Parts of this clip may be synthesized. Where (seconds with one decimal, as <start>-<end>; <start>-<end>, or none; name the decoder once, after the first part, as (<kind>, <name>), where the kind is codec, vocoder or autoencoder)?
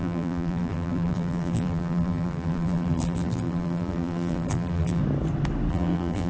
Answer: 0.0-5.0 (vocoder, BigVGAN v2); 5.7-6.3